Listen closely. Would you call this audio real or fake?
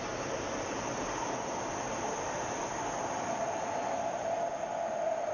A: real